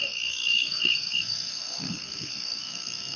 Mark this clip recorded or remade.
remade